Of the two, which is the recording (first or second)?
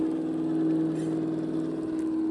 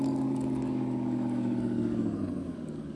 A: first